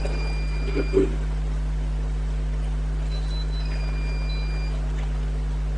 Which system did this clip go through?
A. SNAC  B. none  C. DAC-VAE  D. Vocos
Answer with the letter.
B